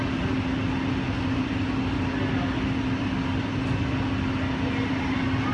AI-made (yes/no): no